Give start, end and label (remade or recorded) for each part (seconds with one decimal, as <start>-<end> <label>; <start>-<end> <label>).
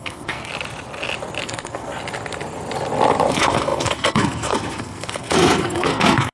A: 0.0-0.5 remade; 0.5-1.4 recorded; 1.4-1.9 remade; 1.9-3.3 recorded; 3.3-6.3 remade